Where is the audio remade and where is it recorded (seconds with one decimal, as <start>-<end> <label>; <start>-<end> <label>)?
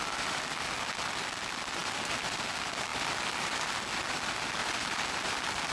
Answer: 0.0-2.9 recorded; 2.9-3.8 remade; 3.8-4.6 recorded; 4.6-5.7 remade